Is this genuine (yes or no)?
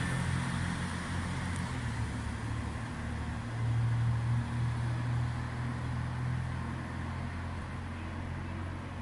yes